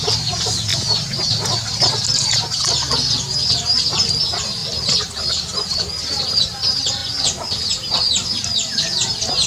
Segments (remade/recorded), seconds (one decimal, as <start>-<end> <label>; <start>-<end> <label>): 0.0-0.7 recorded; 0.7-1.5 remade; 1.5-4.6 recorded; 4.6-5.8 remade; 5.8-7.0 recorded; 7.0-7.6 remade; 7.6-9.5 recorded